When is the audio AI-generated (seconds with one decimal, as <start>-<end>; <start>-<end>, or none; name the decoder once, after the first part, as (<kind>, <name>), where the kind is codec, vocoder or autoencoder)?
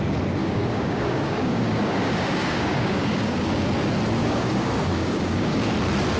0.4-3.7 (codec, DAC); 4.2-5.6